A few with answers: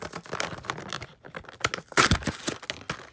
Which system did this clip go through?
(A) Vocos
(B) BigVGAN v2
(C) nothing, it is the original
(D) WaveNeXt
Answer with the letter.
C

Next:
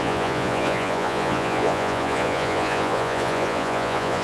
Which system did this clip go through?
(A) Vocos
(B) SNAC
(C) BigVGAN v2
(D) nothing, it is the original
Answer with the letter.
A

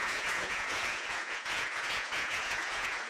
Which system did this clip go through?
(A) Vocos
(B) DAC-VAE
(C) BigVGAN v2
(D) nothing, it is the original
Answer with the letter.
A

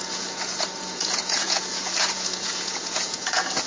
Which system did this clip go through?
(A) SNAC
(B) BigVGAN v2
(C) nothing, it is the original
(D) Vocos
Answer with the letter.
D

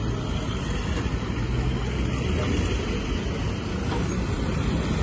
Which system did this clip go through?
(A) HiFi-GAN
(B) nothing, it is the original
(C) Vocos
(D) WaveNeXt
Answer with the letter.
B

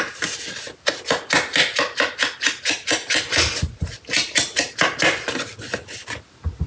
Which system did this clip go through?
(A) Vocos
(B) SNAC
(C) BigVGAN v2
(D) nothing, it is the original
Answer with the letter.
D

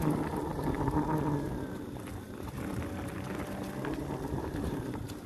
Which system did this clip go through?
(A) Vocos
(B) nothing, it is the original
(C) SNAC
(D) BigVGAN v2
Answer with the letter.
B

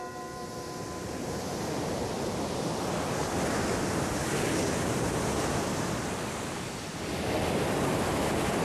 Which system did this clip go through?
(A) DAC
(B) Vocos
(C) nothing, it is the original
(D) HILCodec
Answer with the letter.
C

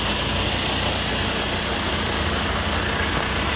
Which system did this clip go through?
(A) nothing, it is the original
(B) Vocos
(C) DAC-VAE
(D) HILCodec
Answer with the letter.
A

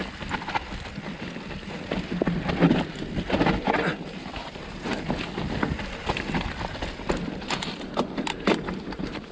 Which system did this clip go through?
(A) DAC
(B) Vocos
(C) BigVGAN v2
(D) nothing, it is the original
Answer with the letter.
D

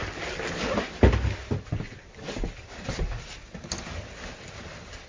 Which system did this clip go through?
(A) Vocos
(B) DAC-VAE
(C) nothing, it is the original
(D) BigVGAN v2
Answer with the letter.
C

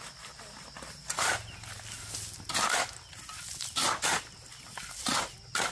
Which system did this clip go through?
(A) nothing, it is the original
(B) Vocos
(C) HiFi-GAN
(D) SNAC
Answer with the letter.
A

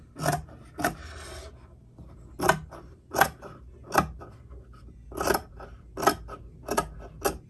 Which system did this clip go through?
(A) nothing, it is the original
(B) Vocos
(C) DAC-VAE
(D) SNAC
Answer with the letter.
A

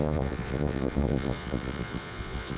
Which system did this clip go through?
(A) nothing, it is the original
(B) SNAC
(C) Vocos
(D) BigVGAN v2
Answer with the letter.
C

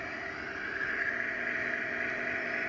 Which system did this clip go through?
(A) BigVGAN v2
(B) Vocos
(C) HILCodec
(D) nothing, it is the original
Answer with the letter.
D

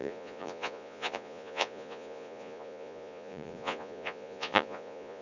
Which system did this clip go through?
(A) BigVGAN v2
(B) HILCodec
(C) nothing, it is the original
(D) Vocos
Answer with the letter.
D